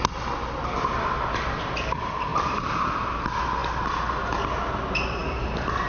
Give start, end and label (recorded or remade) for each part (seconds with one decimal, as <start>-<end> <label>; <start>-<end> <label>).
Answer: 0.0-2.3 recorded; 2.3-3.0 remade; 3.0-5.9 recorded